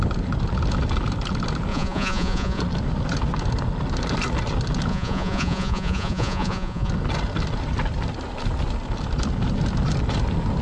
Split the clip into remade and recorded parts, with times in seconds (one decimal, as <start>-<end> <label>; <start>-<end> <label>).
0.0-1.7 recorded; 1.7-2.6 remade; 2.6-4.9 recorded; 4.9-6.9 remade; 6.9-10.6 recorded